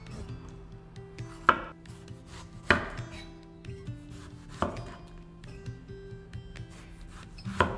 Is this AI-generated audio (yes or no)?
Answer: no